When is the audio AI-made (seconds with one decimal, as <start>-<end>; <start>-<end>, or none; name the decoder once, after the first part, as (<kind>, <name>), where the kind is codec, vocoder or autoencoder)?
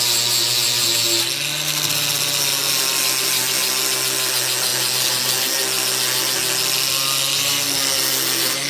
none